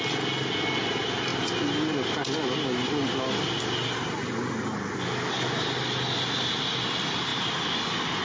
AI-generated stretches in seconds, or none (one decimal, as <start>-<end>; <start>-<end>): none